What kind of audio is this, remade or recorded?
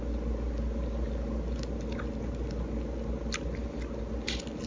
recorded